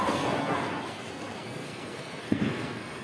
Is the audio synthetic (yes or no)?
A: yes